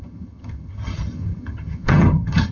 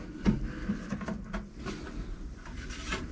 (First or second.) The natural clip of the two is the second